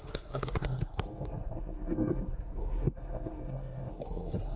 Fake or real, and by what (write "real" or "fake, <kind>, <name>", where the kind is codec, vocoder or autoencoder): fake, codec, SNAC